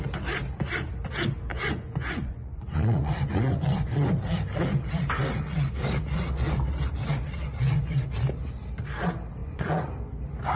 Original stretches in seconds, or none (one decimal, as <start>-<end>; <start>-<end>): 0.0-1.5; 4.1-9.4; 9.9-10.6